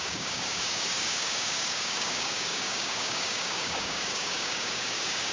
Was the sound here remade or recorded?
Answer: remade